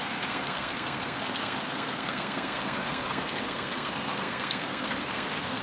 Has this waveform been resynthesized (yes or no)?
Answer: yes